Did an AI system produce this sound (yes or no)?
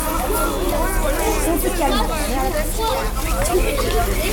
no